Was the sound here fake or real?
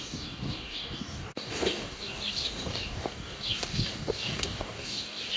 fake